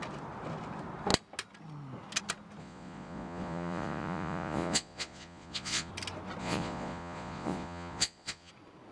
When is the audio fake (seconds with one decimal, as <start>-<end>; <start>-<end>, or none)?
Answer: 2.6-5.9; 6.4-8.5